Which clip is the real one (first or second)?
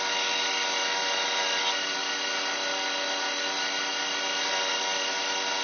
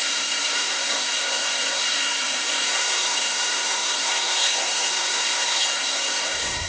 first